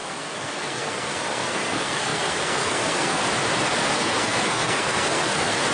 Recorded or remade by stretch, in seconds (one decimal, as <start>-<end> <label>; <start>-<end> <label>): 0.0-3.2 remade; 3.2-3.9 recorded; 3.9-5.7 remade